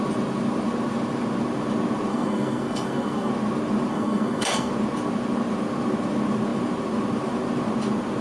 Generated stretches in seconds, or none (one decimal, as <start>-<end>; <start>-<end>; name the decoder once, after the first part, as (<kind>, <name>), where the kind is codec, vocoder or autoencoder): 2.1-3.3 (codec, SNAC); 3.9-4.7